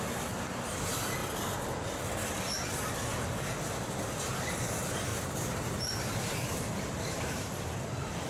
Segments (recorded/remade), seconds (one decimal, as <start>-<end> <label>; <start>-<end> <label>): 0.0-5.1 recorded; 5.1-7.5 remade; 7.5-8.3 recorded